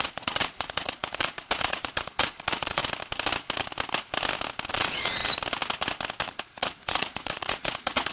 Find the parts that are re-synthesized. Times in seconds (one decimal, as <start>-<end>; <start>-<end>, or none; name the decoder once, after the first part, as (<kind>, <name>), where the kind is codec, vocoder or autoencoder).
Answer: 0.0-2.8 (vocoder, Vocos); 4.7-5.2; 6.4-8.1